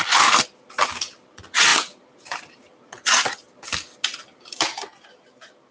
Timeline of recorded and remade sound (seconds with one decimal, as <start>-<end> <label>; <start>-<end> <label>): 0.0-5.7 recorded